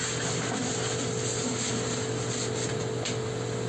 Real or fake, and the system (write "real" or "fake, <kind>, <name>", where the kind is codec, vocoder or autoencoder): real